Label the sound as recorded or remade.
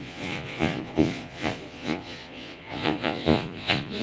remade